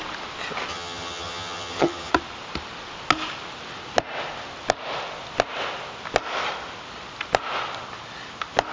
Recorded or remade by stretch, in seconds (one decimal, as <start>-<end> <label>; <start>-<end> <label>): 0.0-0.7 recorded; 0.7-2.1 remade; 2.1-8.7 recorded